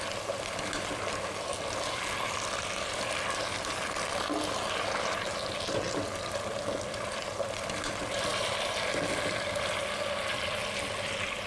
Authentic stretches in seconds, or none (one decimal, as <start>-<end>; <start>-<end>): 0.0-11.5

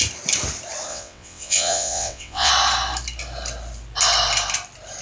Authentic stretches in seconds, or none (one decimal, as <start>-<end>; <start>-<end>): 0.0-0.9; 2.5-5.0

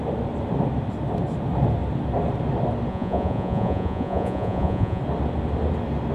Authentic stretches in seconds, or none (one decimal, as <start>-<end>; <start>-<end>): 0.0-2.9; 5.0-6.1

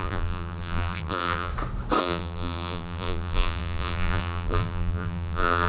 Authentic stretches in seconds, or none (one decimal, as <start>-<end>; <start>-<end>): 1.5-2.0

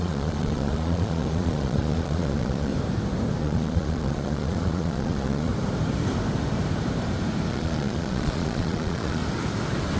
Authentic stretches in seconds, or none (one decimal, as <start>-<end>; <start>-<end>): 2.7-3.4; 5.5-7.5; 9.2-10.0

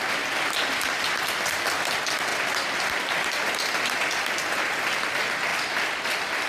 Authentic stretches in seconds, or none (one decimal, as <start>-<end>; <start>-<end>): 0.0-2.3; 3.3-5.5

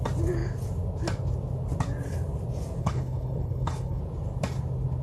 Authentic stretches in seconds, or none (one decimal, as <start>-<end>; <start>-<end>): 0.0-2.8; 4.0-5.0

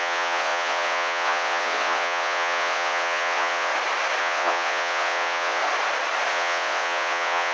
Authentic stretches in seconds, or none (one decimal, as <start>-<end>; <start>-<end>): 3.7-4.2; 5.6-6.3